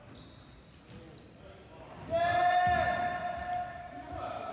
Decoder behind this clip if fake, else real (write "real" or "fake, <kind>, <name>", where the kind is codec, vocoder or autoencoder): real